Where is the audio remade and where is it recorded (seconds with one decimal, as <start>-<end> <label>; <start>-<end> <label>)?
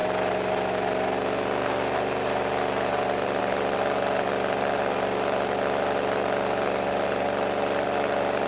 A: 0.0-8.5 recorded